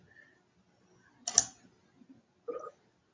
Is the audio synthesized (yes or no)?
no